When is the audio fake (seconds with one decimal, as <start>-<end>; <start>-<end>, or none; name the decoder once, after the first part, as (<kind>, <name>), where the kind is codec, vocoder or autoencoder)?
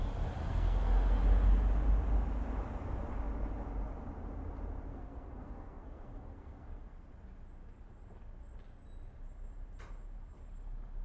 0.4-1.2 (codec, SNAC); 4.9-7.1